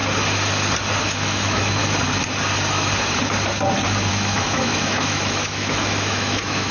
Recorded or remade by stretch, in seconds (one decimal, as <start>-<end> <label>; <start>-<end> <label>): 0.0-1.0 recorded; 1.0-1.8 remade; 1.8-4.1 recorded; 4.1-6.7 remade